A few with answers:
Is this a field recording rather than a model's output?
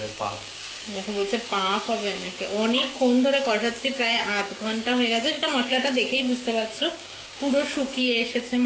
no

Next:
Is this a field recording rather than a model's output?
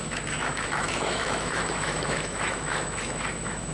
no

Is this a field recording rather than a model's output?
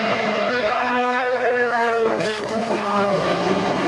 no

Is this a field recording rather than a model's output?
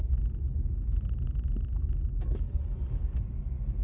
yes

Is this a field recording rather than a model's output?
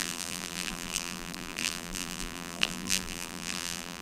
no